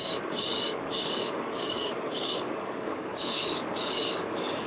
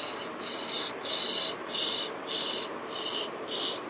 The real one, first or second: second